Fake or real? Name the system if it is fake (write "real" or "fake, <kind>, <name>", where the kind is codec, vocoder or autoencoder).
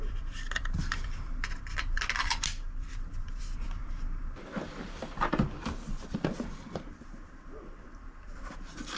fake, vocoder, BigVGAN v2